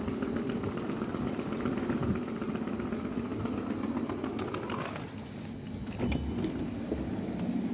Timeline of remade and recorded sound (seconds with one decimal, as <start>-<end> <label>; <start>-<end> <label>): 0.0-7.7 recorded